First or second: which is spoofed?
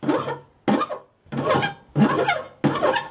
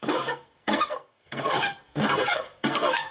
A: second